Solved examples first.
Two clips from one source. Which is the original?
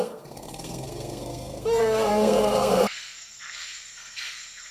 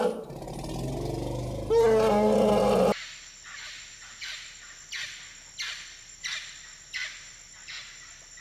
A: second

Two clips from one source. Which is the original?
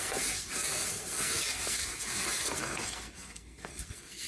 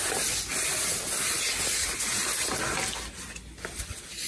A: second